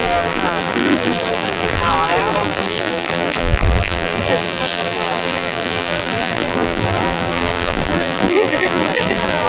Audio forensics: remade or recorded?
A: remade